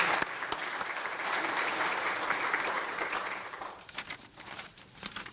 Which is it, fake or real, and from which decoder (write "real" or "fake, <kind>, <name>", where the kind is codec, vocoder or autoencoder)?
fake, vocoder, BigVGAN v2